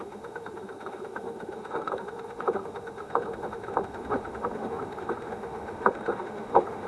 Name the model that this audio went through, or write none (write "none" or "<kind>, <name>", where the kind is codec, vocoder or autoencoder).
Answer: autoencoder, DAC-VAE